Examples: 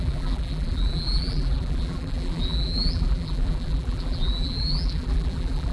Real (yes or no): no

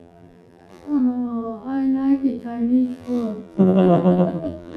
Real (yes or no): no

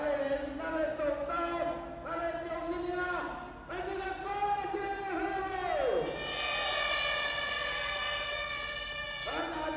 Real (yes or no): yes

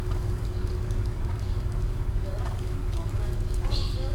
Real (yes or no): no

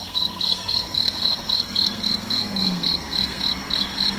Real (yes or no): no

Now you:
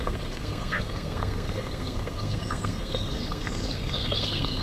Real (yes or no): no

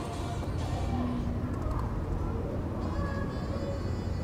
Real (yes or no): yes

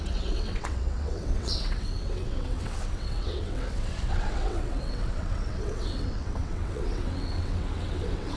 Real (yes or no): no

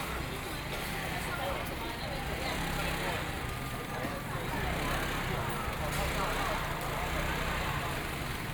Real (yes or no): yes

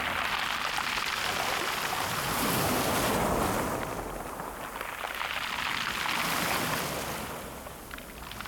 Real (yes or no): yes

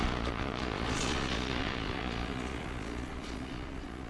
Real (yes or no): no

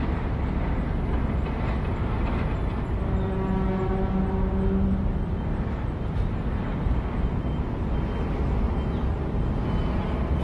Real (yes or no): yes